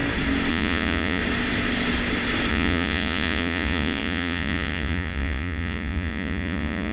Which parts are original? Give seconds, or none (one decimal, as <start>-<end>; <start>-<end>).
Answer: 0.0-0.5; 1.2-2.5